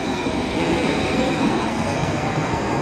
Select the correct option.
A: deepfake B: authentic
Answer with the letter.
A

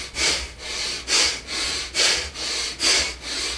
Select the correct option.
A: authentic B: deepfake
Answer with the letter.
A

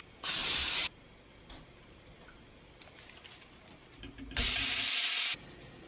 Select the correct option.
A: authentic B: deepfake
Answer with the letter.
A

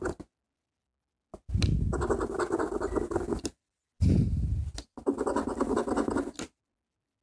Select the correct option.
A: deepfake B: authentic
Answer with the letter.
B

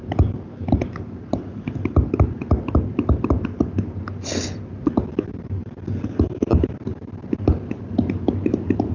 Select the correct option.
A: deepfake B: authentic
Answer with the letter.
B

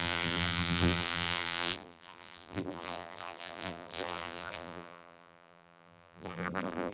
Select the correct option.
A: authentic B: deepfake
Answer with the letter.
B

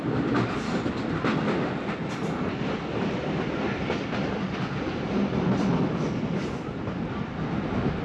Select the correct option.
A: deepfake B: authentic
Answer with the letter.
B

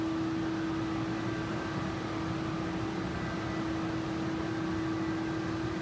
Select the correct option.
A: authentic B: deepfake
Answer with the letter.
A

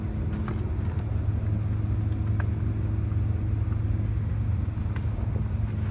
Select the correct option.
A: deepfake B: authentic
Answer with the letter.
B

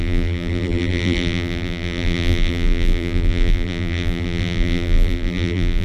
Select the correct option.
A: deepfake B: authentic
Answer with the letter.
A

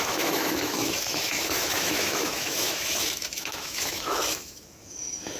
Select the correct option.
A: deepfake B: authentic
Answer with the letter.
A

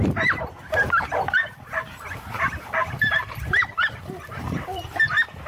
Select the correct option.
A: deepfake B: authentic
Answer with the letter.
A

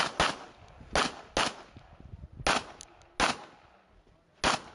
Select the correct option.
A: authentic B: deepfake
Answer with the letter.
A